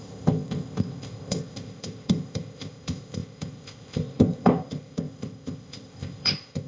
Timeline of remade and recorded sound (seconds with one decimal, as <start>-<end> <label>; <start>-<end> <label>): 0.0-6.7 remade